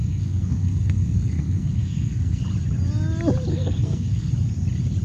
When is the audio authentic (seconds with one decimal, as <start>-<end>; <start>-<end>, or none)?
2.4-3.5; 4.3-5.0